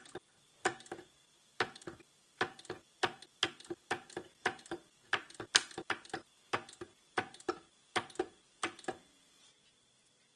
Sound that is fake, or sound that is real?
real